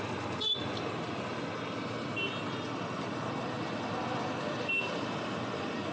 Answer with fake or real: real